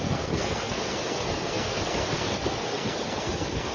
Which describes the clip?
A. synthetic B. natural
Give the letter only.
A